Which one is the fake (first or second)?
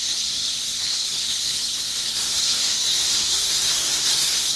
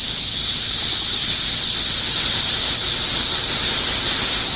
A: first